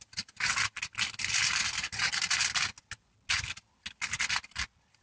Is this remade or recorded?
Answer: recorded